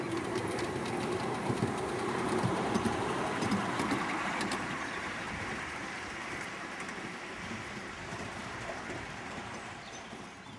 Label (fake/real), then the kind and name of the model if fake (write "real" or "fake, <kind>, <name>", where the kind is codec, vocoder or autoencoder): fake, vocoder, BigVGAN v2